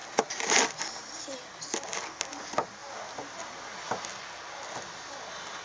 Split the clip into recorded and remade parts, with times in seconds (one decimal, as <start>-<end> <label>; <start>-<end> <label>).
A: 0.0-5.6 recorded